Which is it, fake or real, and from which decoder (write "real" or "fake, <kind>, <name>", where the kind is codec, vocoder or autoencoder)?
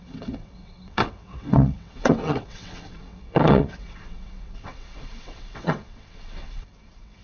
fake, vocoder, WaveNeXt